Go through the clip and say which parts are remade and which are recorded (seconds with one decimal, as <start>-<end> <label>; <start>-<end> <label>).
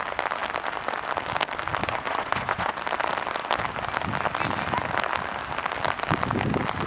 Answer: 0.0-1.8 recorded; 1.8-2.7 remade; 2.7-6.9 recorded